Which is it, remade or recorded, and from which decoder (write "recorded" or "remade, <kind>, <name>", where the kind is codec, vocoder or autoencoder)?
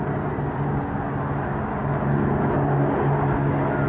recorded